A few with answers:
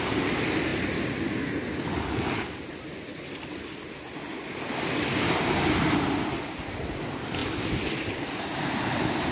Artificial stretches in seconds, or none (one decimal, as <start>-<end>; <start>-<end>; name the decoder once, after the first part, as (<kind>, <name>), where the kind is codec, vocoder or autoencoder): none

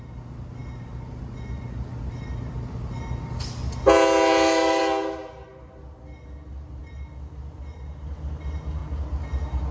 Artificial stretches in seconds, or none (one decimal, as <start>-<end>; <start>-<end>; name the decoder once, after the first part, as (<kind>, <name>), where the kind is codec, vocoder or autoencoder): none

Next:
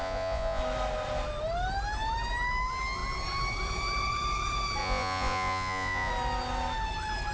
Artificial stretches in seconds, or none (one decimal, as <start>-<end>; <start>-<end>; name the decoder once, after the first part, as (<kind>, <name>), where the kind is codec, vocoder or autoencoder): 0.0-0.6 (vocoder, Vocos); 4.8-6.1

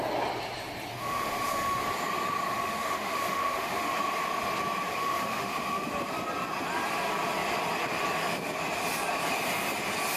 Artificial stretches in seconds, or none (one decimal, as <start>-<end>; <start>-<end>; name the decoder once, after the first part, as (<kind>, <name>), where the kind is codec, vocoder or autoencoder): 0.9-1.8 (autoencoder, DAC-VAE); 2.5-4.0; 4.9-5.9

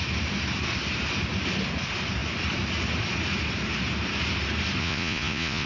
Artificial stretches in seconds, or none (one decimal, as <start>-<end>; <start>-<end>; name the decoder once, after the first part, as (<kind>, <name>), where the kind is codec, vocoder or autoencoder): 4.8-5.7 (vocoder, Vocos)

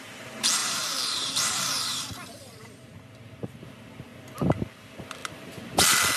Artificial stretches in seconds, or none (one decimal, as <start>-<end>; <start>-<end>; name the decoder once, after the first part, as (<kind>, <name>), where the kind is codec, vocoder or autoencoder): 0.6-3.0 (vocoder, BigVGAN v2)

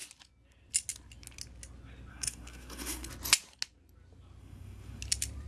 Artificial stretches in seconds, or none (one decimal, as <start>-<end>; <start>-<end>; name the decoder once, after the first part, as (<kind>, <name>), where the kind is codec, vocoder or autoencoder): 2.1-3.1 (codec, SNAC); 4.4-5.0

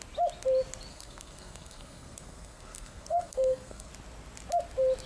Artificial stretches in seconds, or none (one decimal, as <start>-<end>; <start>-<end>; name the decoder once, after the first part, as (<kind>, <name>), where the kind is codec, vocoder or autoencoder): 0.9-3.9 (codec, SNAC)